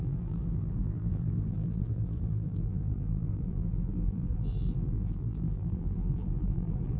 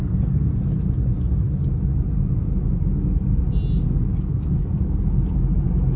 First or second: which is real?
second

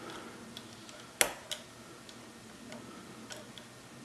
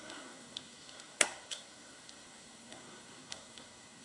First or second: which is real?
first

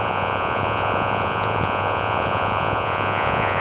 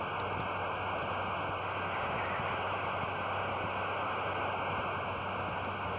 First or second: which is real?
second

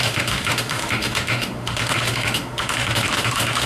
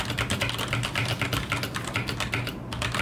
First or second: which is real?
second